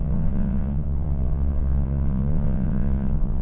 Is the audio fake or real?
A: fake